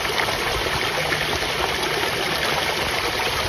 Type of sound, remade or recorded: recorded